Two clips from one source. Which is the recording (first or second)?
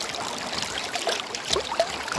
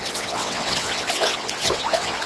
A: first